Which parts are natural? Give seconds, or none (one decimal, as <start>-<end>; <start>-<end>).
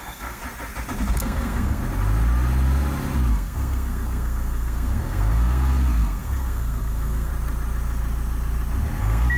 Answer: 0.4-1.2; 1.8-3.3; 7.3-9.0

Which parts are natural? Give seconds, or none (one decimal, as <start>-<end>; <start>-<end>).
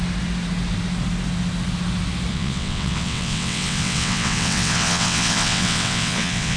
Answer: 0.0-2.3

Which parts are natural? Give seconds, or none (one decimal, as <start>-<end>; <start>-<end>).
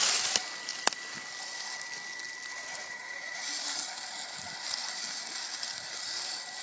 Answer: 0.0-2.8; 3.4-6.6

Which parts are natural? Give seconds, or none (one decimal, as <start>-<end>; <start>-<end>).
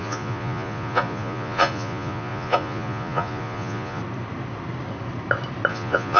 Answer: 4.0-5.7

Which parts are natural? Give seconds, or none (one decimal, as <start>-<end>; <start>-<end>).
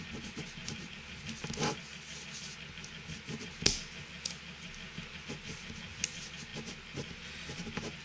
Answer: 0.0-8.0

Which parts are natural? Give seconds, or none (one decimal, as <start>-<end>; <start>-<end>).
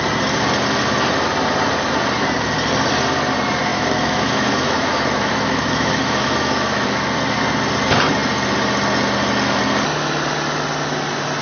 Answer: 0.0-3.7; 7.0-11.4